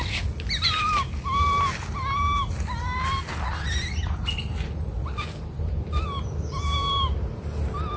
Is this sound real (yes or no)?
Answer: yes